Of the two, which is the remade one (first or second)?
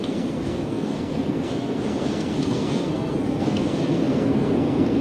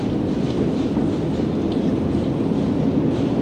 first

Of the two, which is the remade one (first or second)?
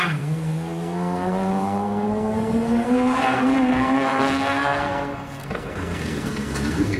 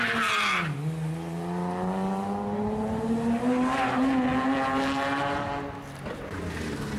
first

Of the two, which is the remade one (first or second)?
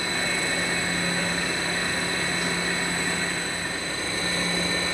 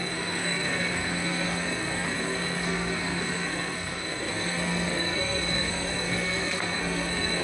second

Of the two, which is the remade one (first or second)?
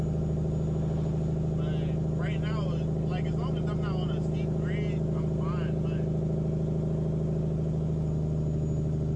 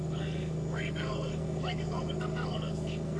second